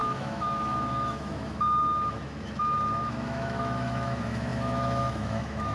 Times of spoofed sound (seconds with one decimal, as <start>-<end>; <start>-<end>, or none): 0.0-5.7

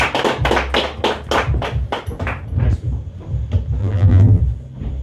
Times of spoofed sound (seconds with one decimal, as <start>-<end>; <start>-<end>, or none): 3.8-4.4

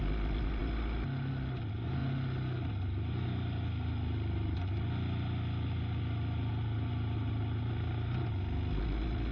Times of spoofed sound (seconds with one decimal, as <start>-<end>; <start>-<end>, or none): none

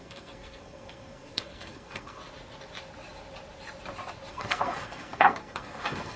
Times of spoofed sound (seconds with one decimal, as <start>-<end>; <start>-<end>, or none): 0.0-2.2; 4.3-6.2

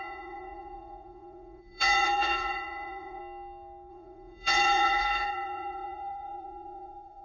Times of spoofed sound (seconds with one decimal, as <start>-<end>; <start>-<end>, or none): 0.0-3.2; 3.9-7.2

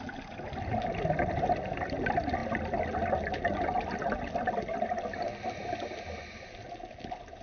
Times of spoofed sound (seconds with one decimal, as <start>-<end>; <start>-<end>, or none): none

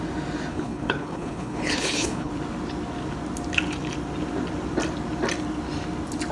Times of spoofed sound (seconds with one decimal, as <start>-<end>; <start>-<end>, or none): 0.5-2.3

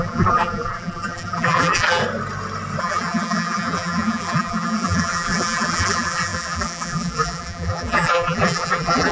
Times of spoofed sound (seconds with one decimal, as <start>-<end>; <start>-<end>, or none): 0.0-2.0; 2.8-9.1